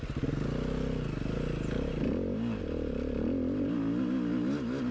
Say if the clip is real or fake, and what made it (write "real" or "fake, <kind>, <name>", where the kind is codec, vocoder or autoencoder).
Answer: real